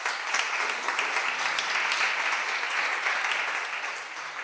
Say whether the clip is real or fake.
real